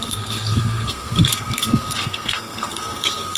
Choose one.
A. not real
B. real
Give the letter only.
A